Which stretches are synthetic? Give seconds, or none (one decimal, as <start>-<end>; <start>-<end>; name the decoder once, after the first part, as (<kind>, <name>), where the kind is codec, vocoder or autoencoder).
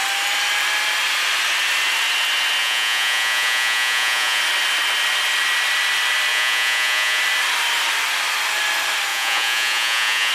2.6-4.4 (vocoder, Vocos); 6.3-7.2; 9.1-10.3